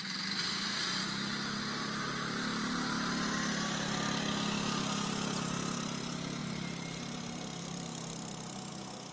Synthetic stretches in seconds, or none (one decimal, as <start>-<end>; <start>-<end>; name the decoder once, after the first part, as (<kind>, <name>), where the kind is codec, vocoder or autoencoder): 0.4-2.6 (vocoder, BigVGAN v2); 6.4-8.7